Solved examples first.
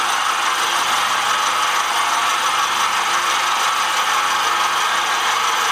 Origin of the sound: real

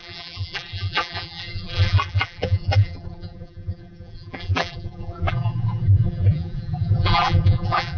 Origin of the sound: fake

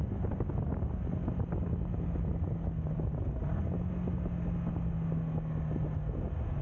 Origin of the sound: real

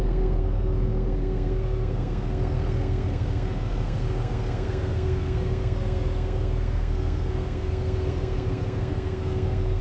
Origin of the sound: fake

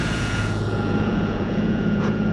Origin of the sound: fake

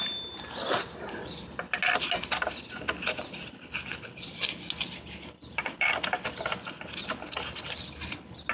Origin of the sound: real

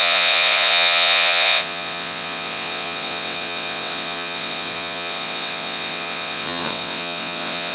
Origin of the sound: fake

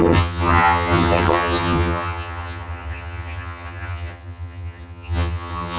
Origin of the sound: fake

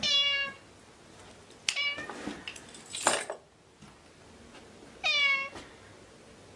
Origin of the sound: real